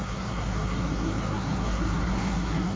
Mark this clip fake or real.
fake